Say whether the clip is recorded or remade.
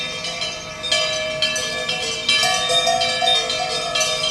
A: recorded